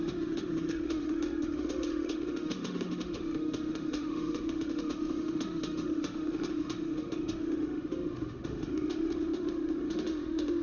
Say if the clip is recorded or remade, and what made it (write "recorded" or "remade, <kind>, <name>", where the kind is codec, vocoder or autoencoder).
remade, autoencoder, DAC-VAE